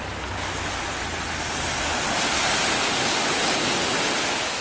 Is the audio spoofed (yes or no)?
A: no